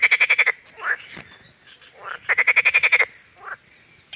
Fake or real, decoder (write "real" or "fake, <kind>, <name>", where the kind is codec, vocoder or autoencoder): real